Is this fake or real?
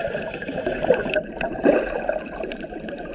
fake